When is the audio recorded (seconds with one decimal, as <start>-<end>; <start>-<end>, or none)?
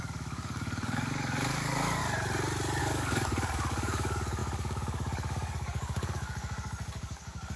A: 2.0-2.8